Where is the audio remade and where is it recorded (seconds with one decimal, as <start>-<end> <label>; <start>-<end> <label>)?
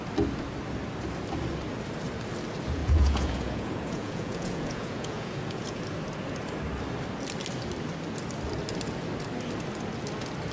0.0-2.8 recorded; 2.8-5.8 remade; 5.8-10.5 recorded